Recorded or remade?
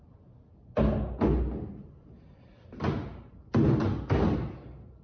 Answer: recorded